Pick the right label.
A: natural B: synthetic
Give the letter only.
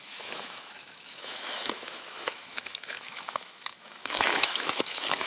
B